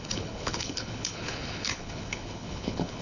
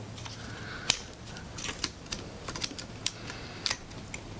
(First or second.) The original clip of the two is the second